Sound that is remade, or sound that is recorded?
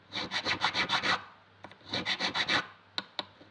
recorded